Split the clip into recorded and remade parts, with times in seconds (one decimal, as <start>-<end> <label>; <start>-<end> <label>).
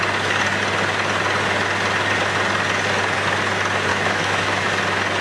0.0-3.9 recorded; 3.9-4.7 remade; 4.7-5.2 recorded